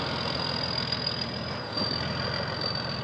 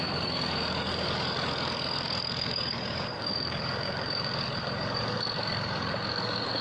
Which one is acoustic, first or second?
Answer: first